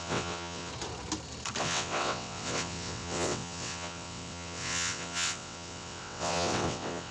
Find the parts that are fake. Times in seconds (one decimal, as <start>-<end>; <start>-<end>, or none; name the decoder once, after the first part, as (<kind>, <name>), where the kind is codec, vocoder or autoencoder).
0.0-0.7 (vocoder, WaveNeXt); 1.6-7.1